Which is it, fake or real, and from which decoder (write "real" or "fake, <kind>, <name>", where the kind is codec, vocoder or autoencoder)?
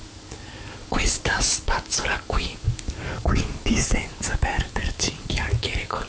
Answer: fake, codec, DAC